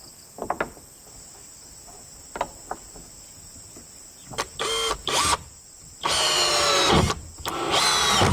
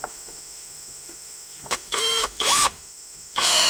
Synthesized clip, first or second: second